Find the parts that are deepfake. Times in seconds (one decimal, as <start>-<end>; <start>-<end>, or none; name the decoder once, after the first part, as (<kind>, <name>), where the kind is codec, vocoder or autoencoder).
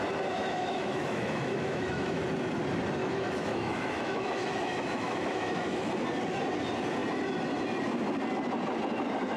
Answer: 0.4-2.2 (autoencoder, DAC-VAE); 3.0-5.9